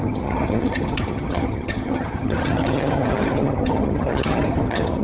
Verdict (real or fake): fake